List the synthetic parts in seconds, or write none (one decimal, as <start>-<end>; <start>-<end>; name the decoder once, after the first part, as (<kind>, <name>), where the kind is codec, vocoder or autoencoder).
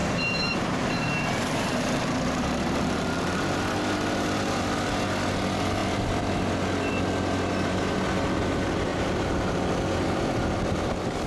0.0-3.6 (vocoder, BigVGAN v2); 8.9-9.6